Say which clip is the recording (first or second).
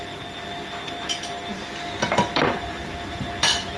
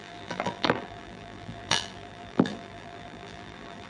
first